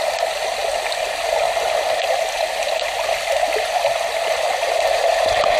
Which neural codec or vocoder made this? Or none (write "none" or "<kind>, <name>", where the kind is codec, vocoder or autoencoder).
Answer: none